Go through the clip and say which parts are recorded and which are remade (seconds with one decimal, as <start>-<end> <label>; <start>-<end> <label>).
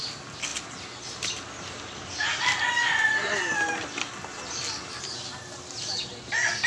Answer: 0.0-6.7 recorded